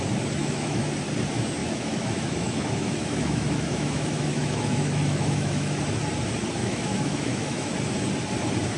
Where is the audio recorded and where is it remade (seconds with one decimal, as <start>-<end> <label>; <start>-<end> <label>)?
0.0-0.4 recorded; 0.4-0.9 remade; 0.9-1.6 recorded; 1.6-5.8 remade; 5.8-6.6 recorded; 6.6-7.7 remade; 7.7-8.8 recorded